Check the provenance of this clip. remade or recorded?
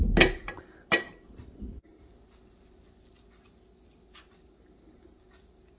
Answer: recorded